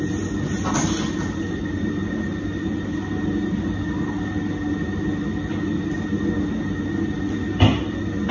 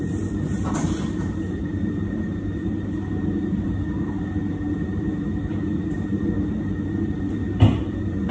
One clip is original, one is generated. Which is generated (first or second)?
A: second